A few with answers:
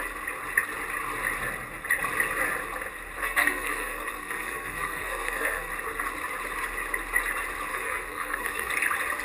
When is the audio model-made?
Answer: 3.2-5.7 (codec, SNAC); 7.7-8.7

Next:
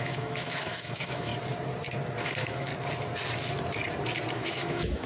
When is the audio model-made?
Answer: 0.0-1.3 (autoencoder, DAC-VAE); 2.2-2.7; 4.3-5.1

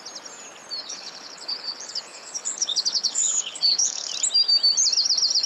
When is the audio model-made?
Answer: 0.8-4.1 (codec, HILCodec)

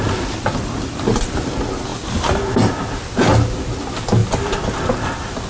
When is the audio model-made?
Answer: none

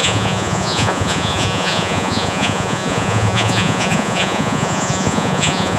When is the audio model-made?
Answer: 0.0-5.8 (vocoder, Vocos)

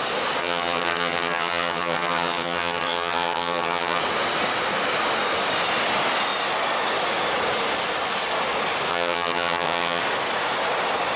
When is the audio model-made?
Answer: 0.4-4.0 (vocoder, HiFi-GAN); 8.9-10.0

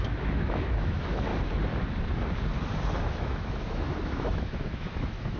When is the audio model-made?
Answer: 0.0-1.3 (autoencoder, DAC-VAE); 3.0-5.4